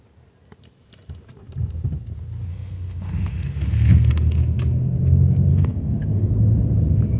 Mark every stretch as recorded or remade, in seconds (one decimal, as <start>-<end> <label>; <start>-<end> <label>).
0.0-2.5 recorded; 2.5-4.1 remade; 4.1-5.5 recorded; 5.5-6.3 remade; 6.3-7.2 recorded